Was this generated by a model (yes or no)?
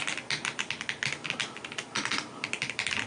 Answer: no